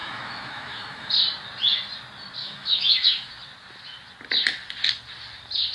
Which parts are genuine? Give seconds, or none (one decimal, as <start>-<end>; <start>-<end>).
1.1-2.4; 3.3-5.7